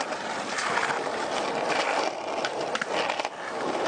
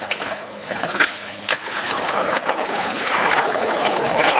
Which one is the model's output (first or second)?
second